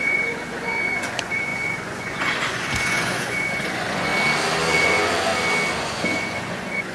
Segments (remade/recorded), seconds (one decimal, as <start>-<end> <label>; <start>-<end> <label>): 0.0-4.1 remade; 4.1-4.7 recorded; 4.7-5.3 remade; 5.3-5.8 recorded; 5.8-6.9 remade

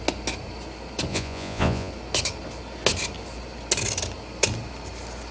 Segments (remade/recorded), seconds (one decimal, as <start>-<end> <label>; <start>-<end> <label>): 0.0-1.1 recorded; 1.1-1.9 remade; 1.9-5.3 recorded

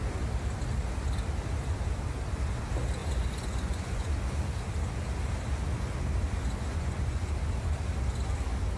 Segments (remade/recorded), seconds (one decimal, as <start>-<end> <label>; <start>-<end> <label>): 0.0-3.0 recorded; 3.0-4.1 remade; 4.1-6.7 recorded; 6.7-7.3 remade; 7.3-8.8 recorded